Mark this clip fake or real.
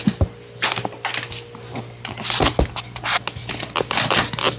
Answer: real